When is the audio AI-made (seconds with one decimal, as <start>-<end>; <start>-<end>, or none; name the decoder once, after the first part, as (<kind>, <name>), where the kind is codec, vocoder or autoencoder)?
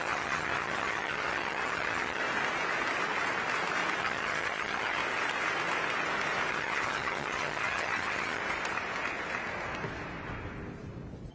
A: 0.0-2.2 (vocoder, HiFi-GAN); 4.0-5.0; 6.5-8.4